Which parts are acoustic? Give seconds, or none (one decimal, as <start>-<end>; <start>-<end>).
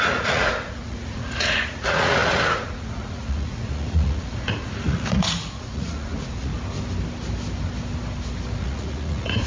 6.5-8.6